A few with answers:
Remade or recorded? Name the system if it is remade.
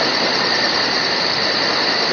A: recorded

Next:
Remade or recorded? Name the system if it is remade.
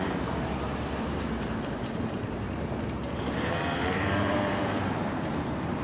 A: remade, vocoder, BigVGAN v2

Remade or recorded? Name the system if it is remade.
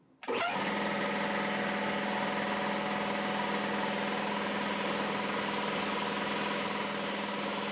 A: recorded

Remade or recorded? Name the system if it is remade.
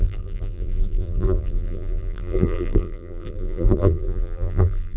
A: remade, vocoder, BigVGAN v2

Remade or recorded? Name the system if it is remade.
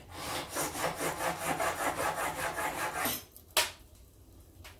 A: recorded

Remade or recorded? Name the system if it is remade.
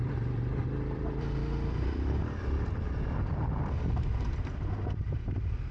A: remade, vocoder, BigVGAN v2